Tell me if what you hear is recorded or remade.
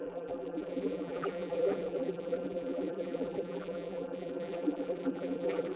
remade